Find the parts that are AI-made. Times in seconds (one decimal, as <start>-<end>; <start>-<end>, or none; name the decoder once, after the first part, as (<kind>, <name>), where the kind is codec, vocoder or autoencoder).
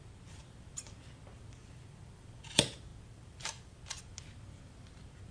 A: 1.6-2.4 (vocoder, BigVGAN v2); 2.9-4.0